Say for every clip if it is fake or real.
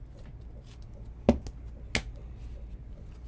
real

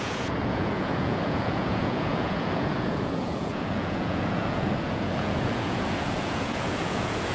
fake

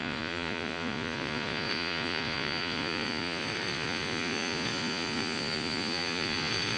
fake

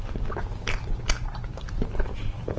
real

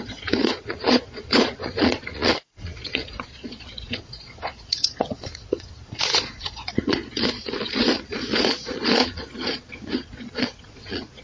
fake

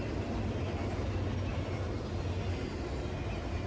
real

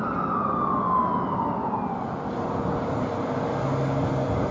real